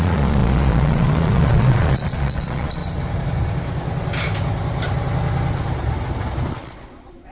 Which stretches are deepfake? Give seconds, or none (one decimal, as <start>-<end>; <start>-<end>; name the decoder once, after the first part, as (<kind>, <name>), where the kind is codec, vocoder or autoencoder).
0.0-2.8 (vocoder, Vocos); 6.5-7.3